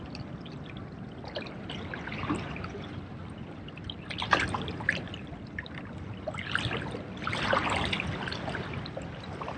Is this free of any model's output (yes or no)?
yes